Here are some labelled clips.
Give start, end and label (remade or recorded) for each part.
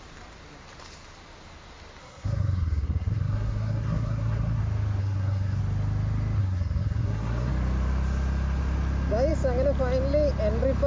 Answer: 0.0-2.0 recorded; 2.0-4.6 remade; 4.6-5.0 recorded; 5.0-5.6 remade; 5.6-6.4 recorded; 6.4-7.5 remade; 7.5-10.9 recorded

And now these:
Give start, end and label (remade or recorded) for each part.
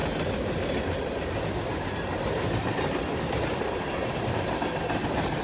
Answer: 0.0-5.4 recorded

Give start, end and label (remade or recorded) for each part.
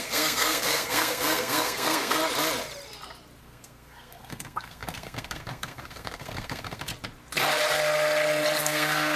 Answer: 0.0-2.2 remade; 2.2-3.4 recorded; 3.4-6.9 remade; 6.9-8.6 recorded; 8.6-9.2 remade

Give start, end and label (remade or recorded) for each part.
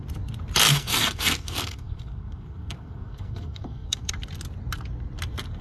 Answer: 0.0-0.7 recorded; 0.7-4.1 remade; 4.1-5.6 recorded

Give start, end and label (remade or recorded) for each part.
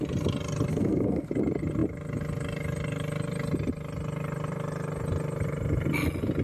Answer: 0.0-0.7 recorded; 0.7-1.3 remade; 1.3-6.4 recorded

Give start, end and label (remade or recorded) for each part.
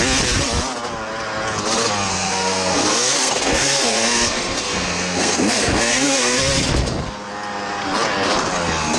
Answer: 0.0-2.1 recorded; 2.1-6.4 remade; 6.4-9.0 recorded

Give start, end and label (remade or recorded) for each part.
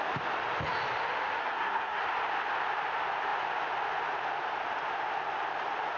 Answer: 0.0-1.4 recorded; 1.4-2.0 remade; 2.0-6.0 recorded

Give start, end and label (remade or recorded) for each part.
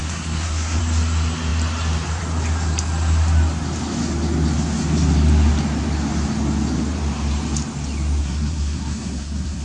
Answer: 0.0-0.8 remade; 0.8-8.2 recorded; 8.2-9.6 remade